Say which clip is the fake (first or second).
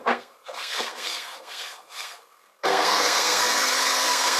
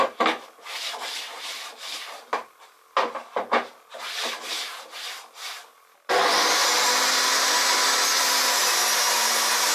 first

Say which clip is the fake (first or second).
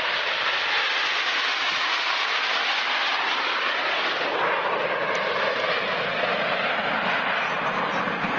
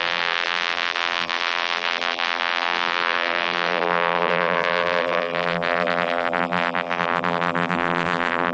second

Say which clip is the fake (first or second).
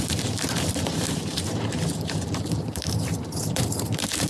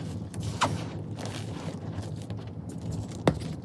first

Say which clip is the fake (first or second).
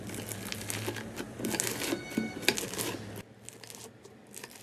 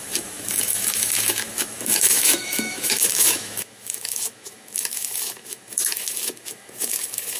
second